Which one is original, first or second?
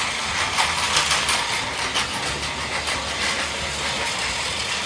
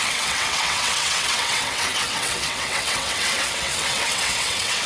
first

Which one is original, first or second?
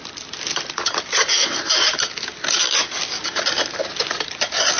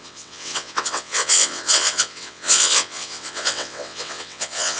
first